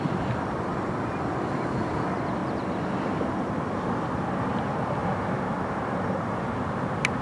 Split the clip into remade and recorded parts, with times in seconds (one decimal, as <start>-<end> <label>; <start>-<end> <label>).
0.0-0.7 remade; 0.7-1.4 recorded; 1.4-2.4 remade; 2.4-4.5 recorded; 4.5-5.0 remade; 5.0-7.2 recorded